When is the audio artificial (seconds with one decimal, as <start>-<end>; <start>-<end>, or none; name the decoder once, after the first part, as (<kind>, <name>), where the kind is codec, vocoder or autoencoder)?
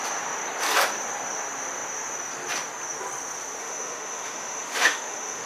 3.6-5.5 (autoencoder, DAC-VAE)